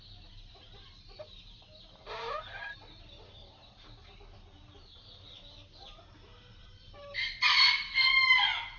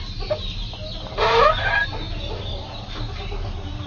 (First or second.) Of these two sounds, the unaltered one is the second